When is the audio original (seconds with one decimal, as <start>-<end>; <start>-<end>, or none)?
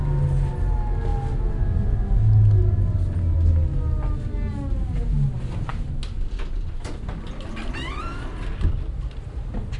0.0-9.8